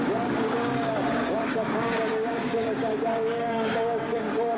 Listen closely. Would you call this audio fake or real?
fake